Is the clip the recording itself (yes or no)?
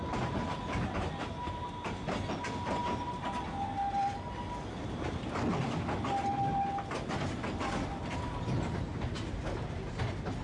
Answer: yes